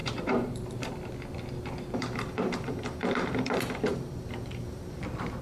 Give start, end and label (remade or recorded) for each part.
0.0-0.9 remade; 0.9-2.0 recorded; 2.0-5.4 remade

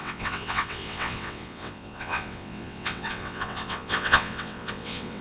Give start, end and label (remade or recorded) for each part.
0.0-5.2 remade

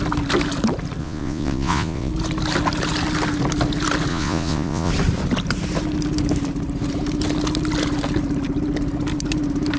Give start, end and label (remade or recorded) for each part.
0.0-1.0 recorded; 1.0-2.1 remade; 2.1-4.1 recorded; 4.1-4.9 remade; 4.9-9.8 recorded

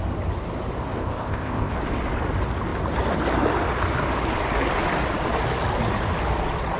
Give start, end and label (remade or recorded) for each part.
0.0-1.0 recorded; 1.0-1.7 remade; 1.7-6.8 recorded